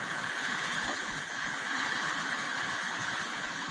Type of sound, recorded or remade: remade